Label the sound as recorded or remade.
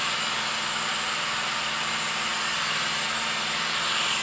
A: recorded